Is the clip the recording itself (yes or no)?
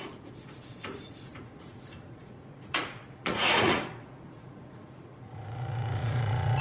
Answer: no